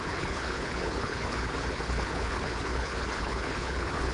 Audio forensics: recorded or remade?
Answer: remade